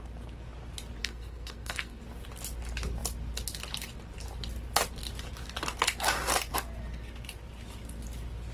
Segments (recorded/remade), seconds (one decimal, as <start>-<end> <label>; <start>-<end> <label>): 0.0-1.0 recorded; 1.0-2.0 remade; 2.0-8.5 recorded